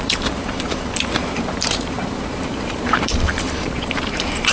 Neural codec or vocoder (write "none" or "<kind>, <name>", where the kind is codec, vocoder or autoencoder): vocoder, BigVGAN v2